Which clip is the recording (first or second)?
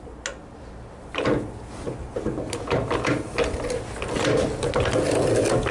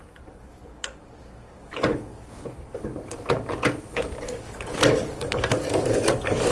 first